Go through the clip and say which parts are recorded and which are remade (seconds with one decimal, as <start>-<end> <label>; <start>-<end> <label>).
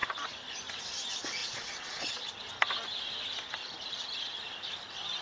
0.0-1.4 recorded; 1.4-2.3 remade; 2.3-5.2 recorded